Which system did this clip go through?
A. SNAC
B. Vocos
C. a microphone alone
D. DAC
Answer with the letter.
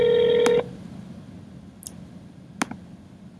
C